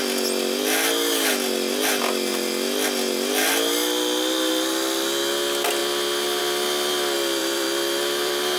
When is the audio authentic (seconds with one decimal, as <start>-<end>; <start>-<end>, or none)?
0.0-7.4